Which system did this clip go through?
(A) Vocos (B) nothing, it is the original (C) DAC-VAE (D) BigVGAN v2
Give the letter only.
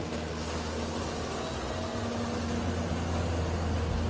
B